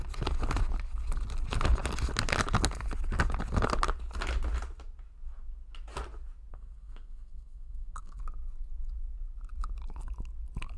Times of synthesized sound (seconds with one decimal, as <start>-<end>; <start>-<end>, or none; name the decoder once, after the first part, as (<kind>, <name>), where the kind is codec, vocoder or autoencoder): 6.5-8.2 (codec, SNAC)